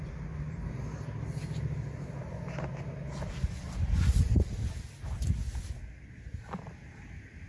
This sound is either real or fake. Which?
real